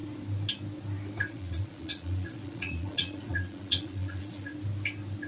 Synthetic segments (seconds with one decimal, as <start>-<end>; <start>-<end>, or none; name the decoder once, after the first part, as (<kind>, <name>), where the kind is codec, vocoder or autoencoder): 1.3-4.5 (vocoder, Vocos)